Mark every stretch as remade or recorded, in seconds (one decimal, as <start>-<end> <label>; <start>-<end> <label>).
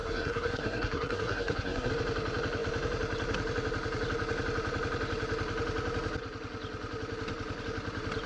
0.0-1.9 remade; 1.9-8.3 recorded